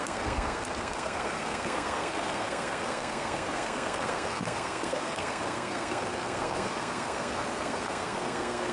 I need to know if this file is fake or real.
fake